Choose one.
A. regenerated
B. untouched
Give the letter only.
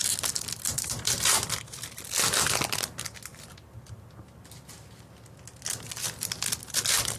B